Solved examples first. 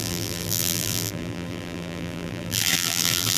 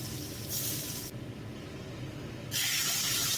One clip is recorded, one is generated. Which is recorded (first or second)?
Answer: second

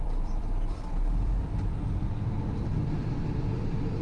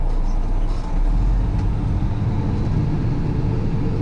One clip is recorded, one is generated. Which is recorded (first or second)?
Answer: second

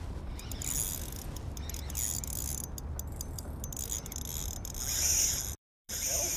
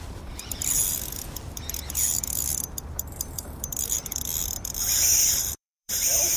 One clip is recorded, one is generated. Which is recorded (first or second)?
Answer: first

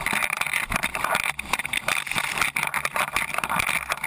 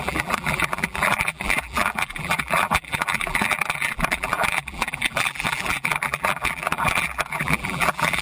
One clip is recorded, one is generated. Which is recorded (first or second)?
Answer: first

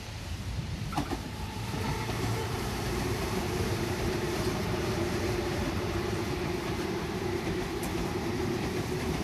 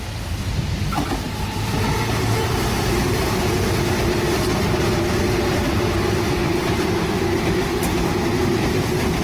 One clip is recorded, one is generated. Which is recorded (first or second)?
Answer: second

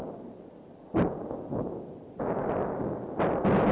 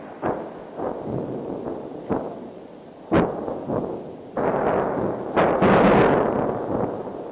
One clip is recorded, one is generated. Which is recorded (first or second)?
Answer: second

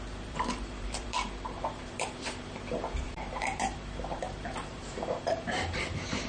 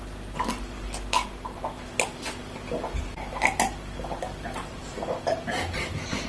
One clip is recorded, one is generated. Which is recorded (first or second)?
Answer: second